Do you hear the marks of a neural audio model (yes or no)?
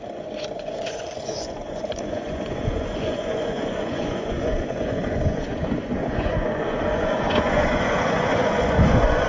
yes